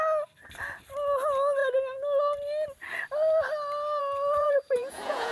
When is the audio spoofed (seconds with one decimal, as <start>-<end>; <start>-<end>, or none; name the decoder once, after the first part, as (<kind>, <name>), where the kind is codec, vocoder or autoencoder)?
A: 4.4-5.3 (vocoder, Vocos)